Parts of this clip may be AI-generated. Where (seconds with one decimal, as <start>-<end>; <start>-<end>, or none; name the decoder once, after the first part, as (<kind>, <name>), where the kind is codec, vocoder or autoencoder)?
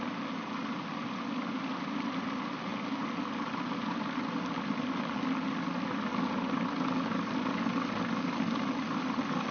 none